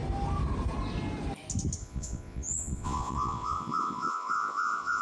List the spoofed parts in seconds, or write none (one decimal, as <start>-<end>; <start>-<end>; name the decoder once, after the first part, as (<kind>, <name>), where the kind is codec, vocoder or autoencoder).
1.8-5.0 (vocoder, Vocos)